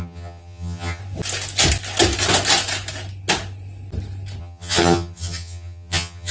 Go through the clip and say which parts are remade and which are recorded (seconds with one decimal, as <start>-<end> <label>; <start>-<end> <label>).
0.0-1.0 remade; 1.0-4.4 recorded; 4.4-6.3 remade